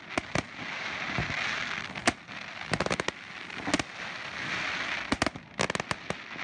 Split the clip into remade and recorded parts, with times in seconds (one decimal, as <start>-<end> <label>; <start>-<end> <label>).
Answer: 0.0-6.4 recorded